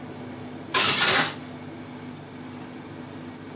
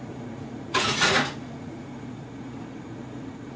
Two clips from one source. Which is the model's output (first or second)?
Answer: second